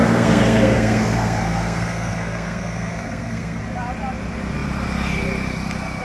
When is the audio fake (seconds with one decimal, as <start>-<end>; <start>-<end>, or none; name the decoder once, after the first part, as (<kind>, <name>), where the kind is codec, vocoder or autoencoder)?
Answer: 0.0-3.6 (codec, SNAC)